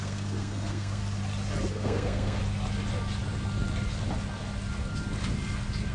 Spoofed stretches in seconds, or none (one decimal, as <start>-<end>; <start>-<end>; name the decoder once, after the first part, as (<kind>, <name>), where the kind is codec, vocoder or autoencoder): 0.0-1.0 (codec, SNAC); 1.7-2.4